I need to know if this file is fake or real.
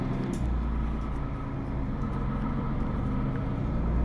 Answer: real